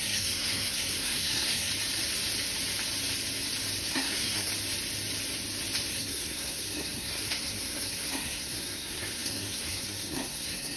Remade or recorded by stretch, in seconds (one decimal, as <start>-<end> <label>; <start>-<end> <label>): 0.0-1.7 remade; 1.7-3.9 recorded; 3.9-4.5 remade; 4.5-5.9 recorded; 5.9-10.8 remade